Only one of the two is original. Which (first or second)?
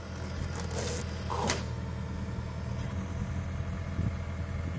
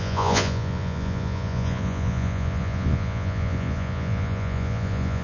first